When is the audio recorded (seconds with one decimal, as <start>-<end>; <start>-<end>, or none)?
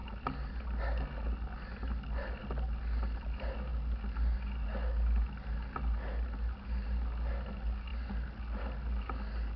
0.0-9.6